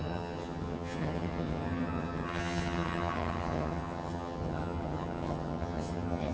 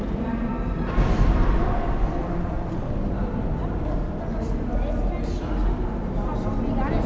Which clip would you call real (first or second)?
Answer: second